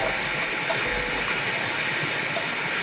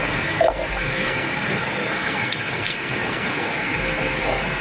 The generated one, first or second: second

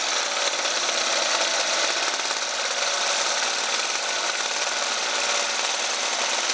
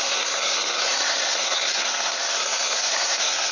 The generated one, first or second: second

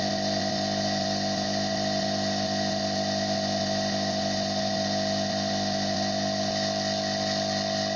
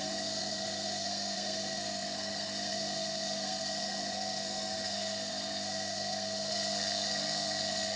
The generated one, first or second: second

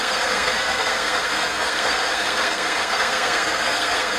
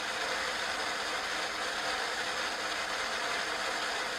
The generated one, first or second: first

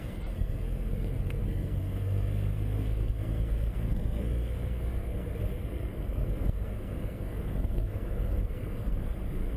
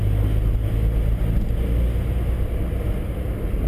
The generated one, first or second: first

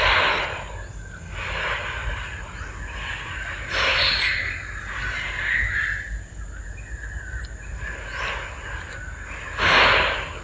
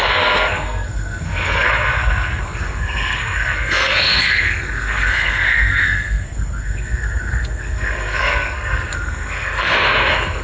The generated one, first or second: second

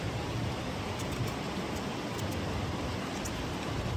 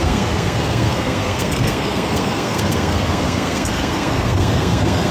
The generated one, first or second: second